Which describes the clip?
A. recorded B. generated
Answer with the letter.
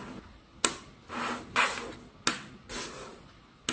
A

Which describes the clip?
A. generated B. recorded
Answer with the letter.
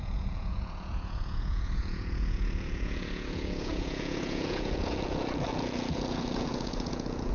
A